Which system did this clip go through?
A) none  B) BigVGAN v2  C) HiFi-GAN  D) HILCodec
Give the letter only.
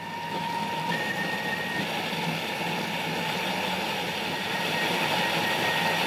B